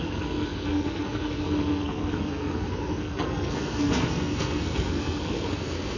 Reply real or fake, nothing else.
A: fake